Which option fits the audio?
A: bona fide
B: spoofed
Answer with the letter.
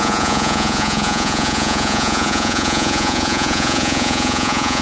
B